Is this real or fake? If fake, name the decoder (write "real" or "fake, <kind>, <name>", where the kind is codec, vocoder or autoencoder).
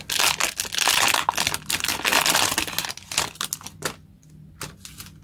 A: real